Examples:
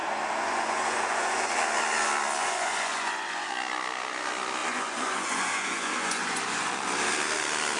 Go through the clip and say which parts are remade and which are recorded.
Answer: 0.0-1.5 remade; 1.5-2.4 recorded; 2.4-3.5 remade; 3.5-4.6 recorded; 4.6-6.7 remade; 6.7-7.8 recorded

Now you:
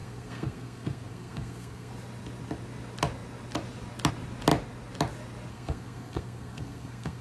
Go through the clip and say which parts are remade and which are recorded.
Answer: 0.0-1.9 remade; 1.9-5.5 recorded; 5.5-7.2 remade

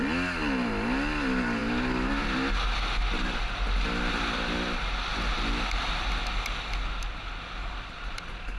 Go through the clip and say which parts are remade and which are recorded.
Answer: 0.0-8.6 recorded

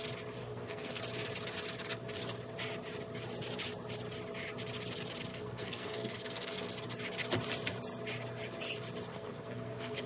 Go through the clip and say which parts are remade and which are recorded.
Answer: 0.0-0.4 recorded; 0.4-1.0 remade; 1.0-5.3 recorded; 5.3-6.7 remade; 6.7-9.1 recorded; 9.1-10.1 remade

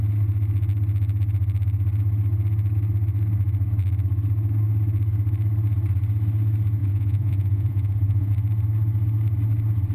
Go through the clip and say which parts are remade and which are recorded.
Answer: 0.0-6.8 recorded; 6.8-8.3 remade; 8.3-9.9 recorded